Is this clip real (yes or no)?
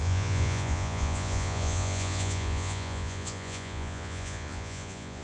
no